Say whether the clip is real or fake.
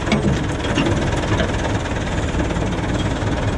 real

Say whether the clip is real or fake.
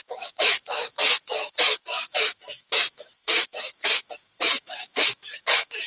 fake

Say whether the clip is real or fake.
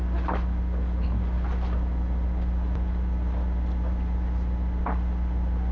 real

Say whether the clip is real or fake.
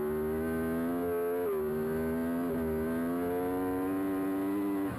real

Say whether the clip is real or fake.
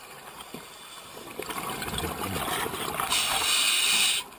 real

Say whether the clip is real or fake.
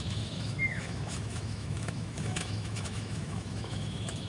fake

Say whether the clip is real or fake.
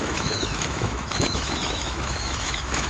fake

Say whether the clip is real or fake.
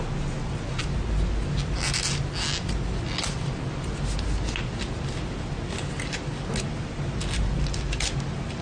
real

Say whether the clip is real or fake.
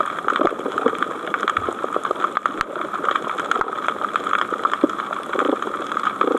real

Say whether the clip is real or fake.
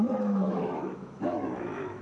fake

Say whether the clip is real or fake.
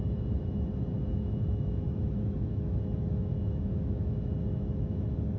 fake